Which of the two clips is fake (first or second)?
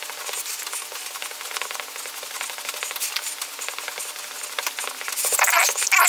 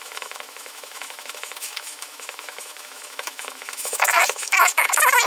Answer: second